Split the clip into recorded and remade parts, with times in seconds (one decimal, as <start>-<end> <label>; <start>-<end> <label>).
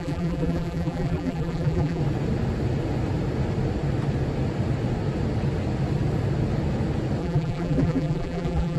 0.0-2.0 remade; 2.0-7.2 recorded; 7.2-8.8 remade